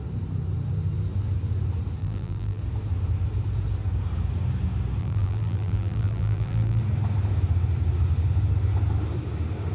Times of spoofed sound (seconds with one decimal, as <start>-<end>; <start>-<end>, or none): 2.0-2.6; 5.0-6.8